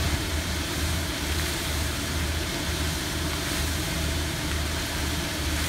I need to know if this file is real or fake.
fake